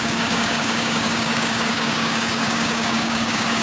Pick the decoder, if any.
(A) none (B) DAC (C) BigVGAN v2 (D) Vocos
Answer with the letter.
B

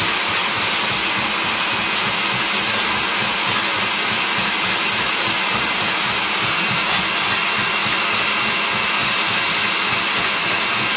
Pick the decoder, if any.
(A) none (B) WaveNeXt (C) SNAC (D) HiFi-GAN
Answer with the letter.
A